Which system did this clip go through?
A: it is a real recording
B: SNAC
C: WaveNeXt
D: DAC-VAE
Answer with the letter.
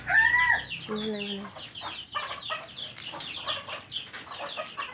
A